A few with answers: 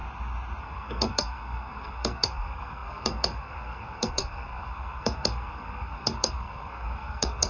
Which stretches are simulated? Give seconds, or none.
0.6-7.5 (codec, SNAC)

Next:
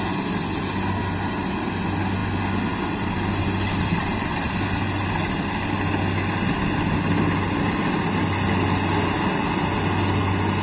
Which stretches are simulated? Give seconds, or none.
none

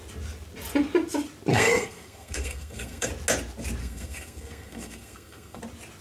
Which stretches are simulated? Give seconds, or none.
1.5-3.1 (codec, SNAC); 3.8-5.6